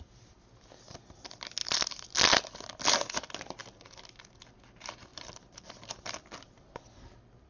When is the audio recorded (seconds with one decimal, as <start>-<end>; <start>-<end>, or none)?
0.0-1.6; 2.5-5.1; 6.9-7.5